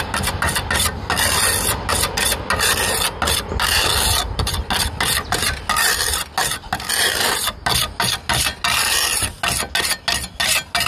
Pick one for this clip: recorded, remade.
recorded